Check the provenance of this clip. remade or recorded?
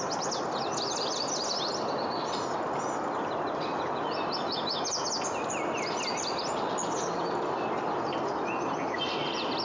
recorded